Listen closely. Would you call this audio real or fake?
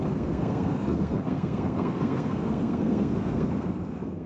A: fake